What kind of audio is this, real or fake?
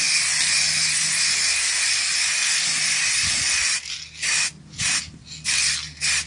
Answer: real